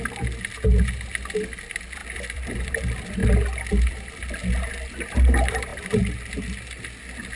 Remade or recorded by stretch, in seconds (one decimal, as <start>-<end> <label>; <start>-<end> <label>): 0.0-2.0 recorded; 2.0-2.8 remade; 2.8-7.4 recorded